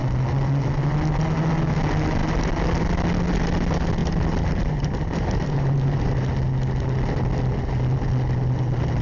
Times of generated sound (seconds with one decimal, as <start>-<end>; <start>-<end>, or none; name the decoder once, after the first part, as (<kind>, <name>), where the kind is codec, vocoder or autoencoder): 4.0-6.3 (vocoder, BigVGAN v2)